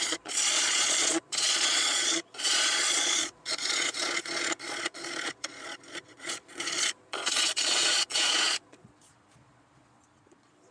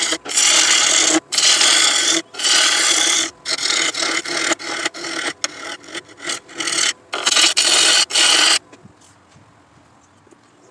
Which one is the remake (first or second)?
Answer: first